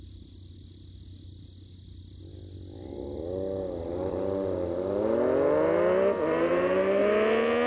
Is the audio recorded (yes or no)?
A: yes